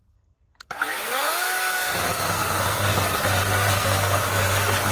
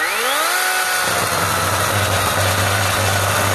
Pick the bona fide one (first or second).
second